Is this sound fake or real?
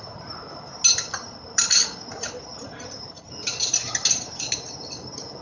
real